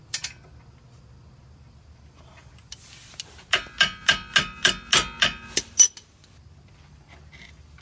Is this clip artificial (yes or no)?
no